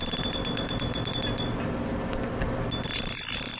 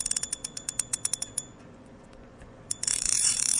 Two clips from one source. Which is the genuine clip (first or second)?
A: first